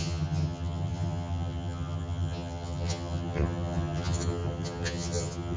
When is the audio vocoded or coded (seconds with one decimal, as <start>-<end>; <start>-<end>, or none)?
0.0-5.6